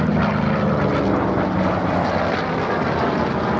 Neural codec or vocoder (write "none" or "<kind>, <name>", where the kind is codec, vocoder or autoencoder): none